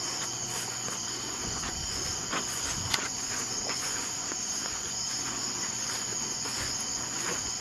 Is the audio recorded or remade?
remade